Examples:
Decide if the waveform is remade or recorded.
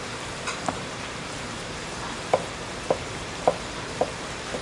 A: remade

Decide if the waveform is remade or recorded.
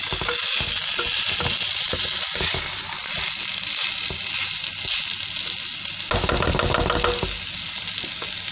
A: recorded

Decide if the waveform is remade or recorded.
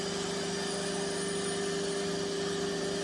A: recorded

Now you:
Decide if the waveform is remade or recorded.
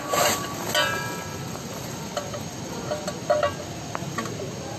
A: recorded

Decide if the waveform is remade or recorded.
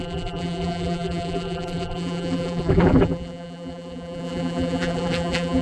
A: remade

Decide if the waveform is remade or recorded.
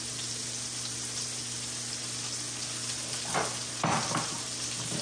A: recorded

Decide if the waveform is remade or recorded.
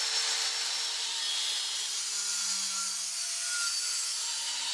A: remade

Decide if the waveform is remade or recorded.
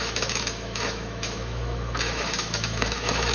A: remade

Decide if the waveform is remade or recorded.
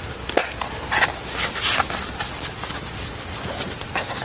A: recorded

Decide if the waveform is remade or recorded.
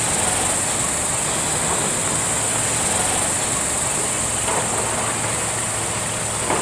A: recorded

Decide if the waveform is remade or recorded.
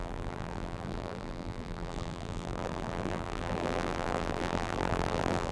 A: remade